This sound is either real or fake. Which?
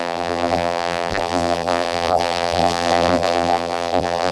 fake